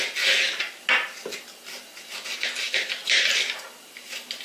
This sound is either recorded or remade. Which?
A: recorded